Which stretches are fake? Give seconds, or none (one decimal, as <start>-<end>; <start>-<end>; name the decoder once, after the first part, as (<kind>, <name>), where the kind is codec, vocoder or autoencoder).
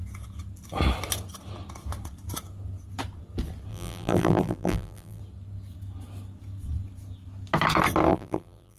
3.7-5.2 (vocoder, BigVGAN v2); 8.1-8.8